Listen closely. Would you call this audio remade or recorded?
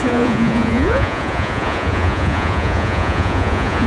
remade